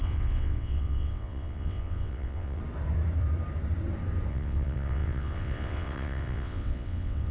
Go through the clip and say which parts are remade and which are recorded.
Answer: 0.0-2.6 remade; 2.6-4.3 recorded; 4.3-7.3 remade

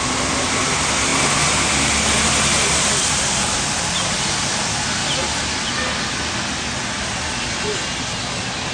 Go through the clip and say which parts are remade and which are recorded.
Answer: 0.0-8.7 recorded